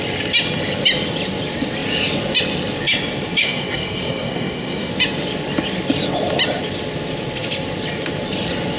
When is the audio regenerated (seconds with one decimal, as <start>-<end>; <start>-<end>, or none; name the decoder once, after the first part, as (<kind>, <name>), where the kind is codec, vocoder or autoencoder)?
3.4-4.9 (codec, SNAC)